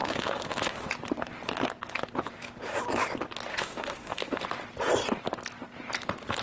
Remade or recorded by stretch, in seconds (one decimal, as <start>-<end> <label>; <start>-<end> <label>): 0.0-0.9 remade; 0.9-3.5 recorded; 3.5-4.4 remade; 4.4-6.4 recorded